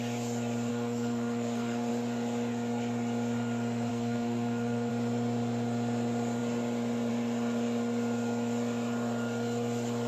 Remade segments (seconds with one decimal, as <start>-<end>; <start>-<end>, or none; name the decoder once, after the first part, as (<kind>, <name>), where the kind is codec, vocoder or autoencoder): 0.7-1.9 (codec, SNAC); 3.9-4.9